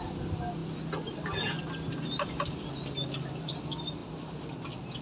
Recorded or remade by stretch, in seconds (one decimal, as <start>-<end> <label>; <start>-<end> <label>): 0.0-5.0 recorded